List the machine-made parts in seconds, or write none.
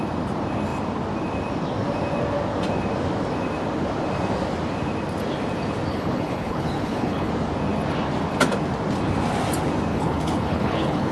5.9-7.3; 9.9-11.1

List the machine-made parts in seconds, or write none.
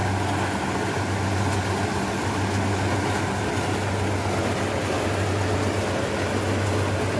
none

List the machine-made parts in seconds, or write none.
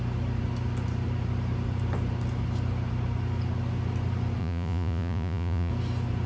4.4-5.7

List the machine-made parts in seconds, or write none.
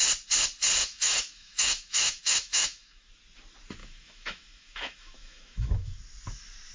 0.8-3.1; 3.8-6.0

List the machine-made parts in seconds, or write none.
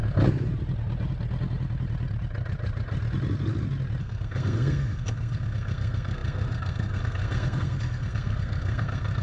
4.0-9.2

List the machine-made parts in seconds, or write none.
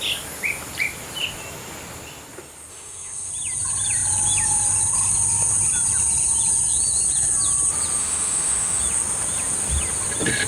2.7-3.3; 8.0-8.8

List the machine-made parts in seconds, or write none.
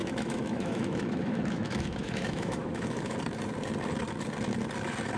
0.0-3.1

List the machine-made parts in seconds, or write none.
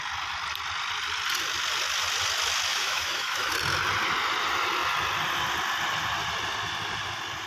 2.7-3.5